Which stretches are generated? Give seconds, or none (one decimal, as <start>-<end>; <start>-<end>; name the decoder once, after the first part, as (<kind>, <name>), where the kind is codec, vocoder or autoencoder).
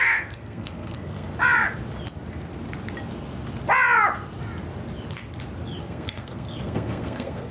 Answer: 0.0-1.3 (codec, SNAC); 5.8-7.5